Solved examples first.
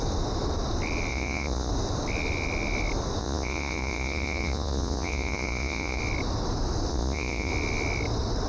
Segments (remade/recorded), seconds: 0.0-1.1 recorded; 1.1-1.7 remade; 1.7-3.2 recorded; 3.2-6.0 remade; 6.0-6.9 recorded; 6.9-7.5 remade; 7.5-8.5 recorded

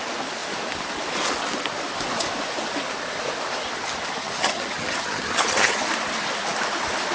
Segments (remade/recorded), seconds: 0.0-4.2 recorded; 4.2-5.9 remade; 5.9-7.1 recorded

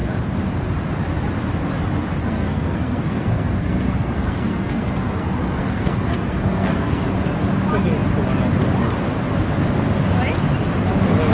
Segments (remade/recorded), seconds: 0.0-2.2 recorded; 2.2-7.0 remade; 7.0-11.3 recorded

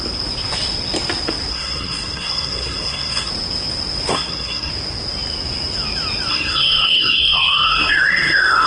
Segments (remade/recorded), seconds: 0.0-1.5 recorded; 1.5-3.3 remade; 3.3-4.1 recorded; 4.1-4.7 remade; 4.7-6.3 recorded; 6.3-8.7 remade

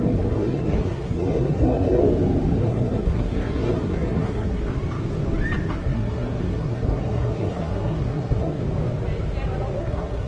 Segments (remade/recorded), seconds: 0.0-2.0 remade; 2.0-2.6 recorded; 2.6-4.6 remade; 4.6-5.7 recorded; 5.7-8.6 remade; 8.6-9.8 recorded; 9.8-10.3 remade

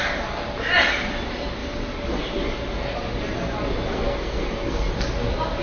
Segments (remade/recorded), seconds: 0.0-3.9 recorded; 3.9-4.9 remade; 4.9-5.6 recorded